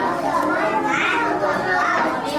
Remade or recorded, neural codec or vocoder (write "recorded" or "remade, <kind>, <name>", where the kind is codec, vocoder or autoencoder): recorded